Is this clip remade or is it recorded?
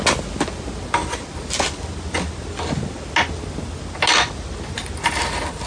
recorded